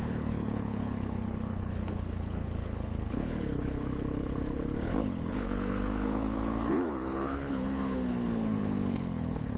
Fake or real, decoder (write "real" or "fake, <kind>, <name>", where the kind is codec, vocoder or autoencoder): fake, codec, HILCodec